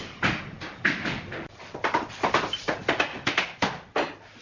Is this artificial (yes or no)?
no